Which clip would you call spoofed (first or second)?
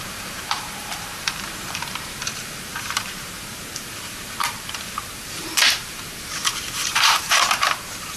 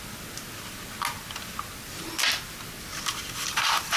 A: first